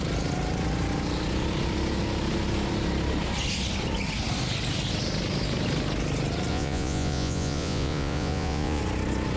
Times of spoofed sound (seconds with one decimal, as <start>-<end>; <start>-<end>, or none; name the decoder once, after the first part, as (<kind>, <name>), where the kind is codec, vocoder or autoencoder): 6.5-8.8 (vocoder, Vocos)